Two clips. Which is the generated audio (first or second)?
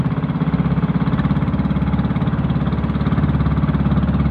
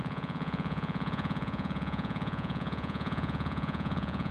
second